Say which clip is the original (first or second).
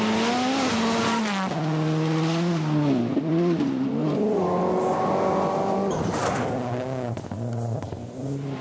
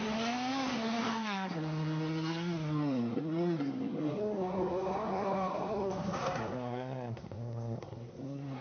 first